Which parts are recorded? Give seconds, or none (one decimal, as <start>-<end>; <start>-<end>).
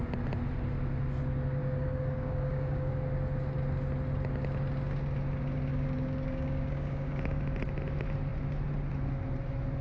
0.0-1.6; 2.9-5.7; 7.4-9.8